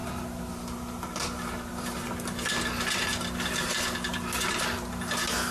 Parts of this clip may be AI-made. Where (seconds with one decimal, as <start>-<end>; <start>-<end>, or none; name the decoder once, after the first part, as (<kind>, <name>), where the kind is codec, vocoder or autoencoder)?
none